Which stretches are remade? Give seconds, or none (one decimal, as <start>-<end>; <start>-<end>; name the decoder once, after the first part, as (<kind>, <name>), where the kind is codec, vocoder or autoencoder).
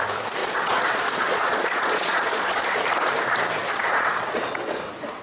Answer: 0.4-2.8 (vocoder, Vocos); 3.6-4.8